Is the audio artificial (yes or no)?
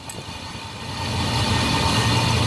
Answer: no